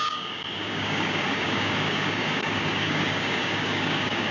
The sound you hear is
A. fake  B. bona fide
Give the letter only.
A